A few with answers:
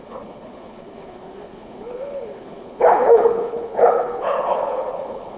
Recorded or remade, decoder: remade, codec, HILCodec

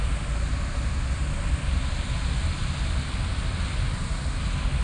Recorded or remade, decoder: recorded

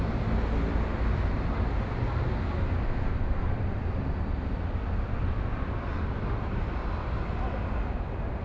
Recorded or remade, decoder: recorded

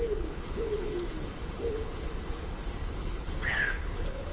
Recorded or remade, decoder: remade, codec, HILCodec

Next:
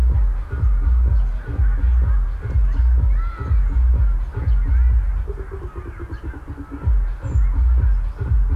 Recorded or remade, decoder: recorded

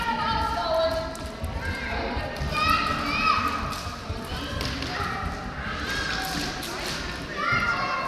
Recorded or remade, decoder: recorded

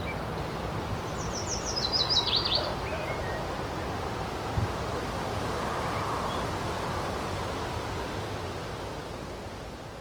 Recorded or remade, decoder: recorded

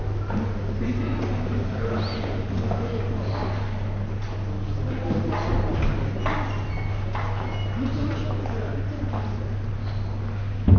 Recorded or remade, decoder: recorded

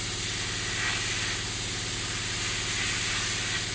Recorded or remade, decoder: recorded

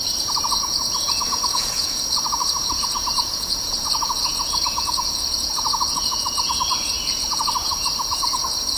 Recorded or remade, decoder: remade, vocoder, Vocos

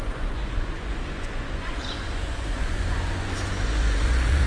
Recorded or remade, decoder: remade, vocoder, Vocos